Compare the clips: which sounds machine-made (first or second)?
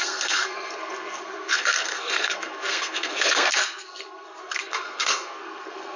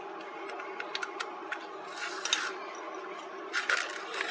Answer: first